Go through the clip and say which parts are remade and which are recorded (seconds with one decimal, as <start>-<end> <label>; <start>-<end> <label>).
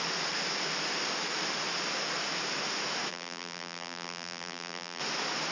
0.0-3.1 recorded; 3.1-5.0 remade; 5.0-5.5 recorded